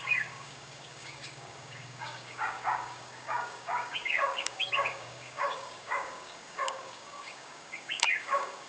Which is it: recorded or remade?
remade